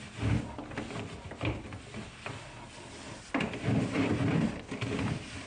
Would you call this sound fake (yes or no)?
no